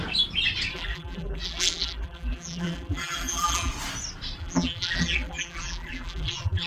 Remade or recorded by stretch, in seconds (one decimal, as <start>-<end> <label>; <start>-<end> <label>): 0.0-0.7 recorded; 0.7-3.7 remade; 3.7-4.4 recorded; 4.4-6.7 remade